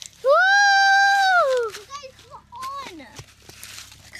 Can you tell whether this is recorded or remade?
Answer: recorded